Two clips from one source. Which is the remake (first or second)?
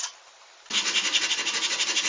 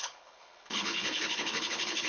second